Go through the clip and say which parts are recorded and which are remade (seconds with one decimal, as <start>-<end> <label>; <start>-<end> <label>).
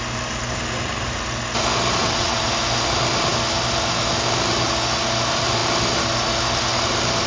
0.0-2.0 recorded; 2.0-2.5 remade; 2.5-7.3 recorded